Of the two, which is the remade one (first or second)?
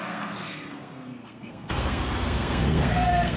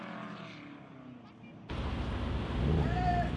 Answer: first